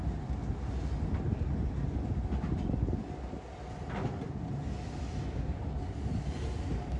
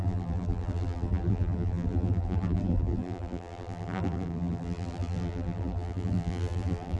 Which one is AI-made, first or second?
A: second